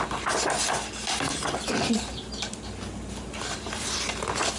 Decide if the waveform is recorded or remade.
recorded